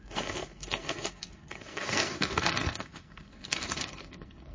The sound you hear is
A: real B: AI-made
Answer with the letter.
B